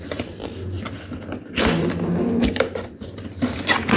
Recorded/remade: remade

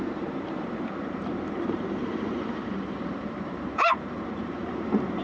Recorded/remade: remade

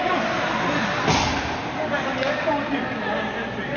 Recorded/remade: recorded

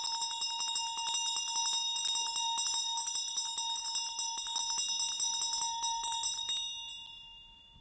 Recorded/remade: recorded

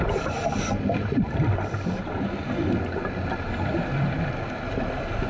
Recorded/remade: recorded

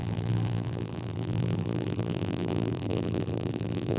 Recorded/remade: remade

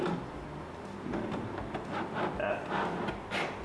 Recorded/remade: recorded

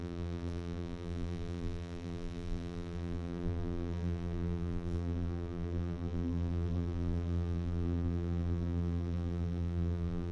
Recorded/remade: remade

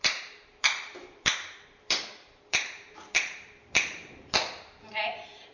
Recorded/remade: remade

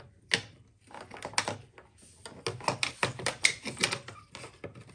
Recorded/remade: recorded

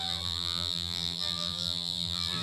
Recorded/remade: remade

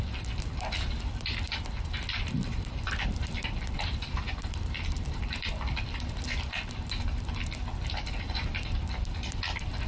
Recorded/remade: remade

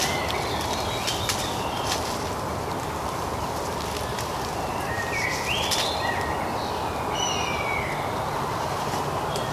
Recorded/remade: recorded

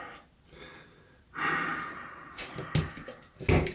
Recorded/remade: recorded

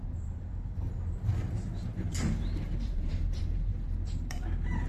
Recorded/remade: remade